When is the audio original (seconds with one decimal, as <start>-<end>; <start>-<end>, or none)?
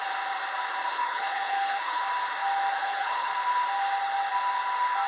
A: 0.0-0.9; 2.0-2.8; 3.3-5.1